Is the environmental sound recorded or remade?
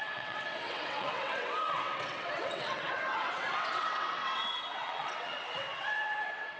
remade